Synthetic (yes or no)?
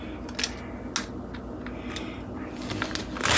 no